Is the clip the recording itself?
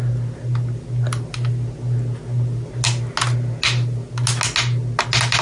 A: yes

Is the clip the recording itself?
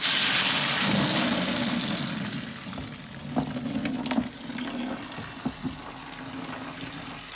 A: yes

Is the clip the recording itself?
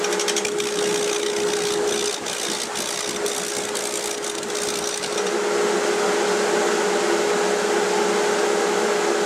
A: yes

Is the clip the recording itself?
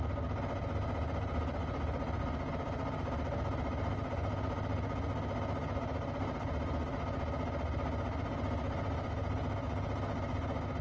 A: yes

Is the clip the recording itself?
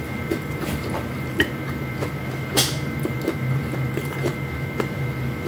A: no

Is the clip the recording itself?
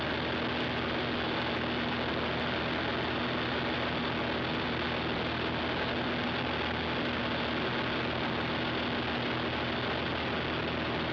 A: yes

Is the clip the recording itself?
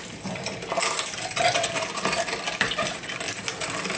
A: yes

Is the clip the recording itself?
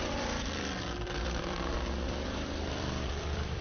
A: no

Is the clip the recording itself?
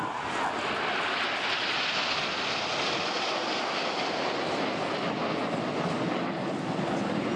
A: yes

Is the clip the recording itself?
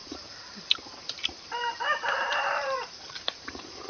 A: no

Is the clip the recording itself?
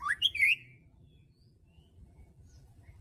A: no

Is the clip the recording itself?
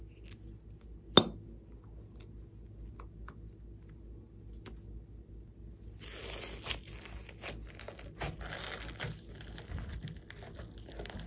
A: yes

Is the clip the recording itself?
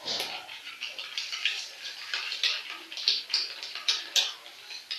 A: yes